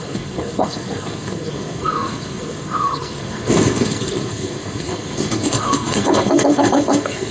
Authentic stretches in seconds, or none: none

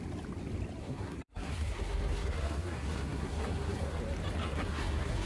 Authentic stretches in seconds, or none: 0.0-0.8; 4.0-4.4

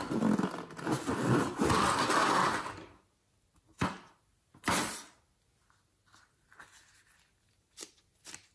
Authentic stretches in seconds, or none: 0.0-8.5